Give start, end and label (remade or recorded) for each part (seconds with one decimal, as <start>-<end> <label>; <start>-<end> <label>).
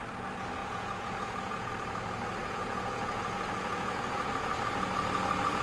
0.0-0.6 recorded; 0.6-1.7 remade; 1.7-2.4 recorded; 2.4-4.3 remade; 4.3-5.6 recorded